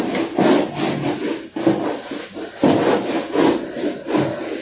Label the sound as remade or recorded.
recorded